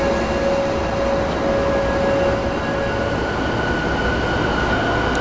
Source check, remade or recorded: recorded